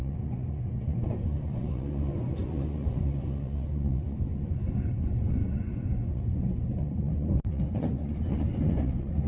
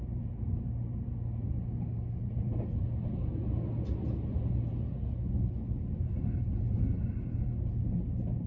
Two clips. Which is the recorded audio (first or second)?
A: second